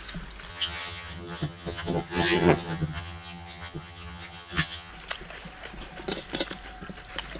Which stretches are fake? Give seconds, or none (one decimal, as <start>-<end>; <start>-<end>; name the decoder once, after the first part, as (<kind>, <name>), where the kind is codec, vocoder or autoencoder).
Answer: 0.5-4.9 (vocoder, HiFi-GAN)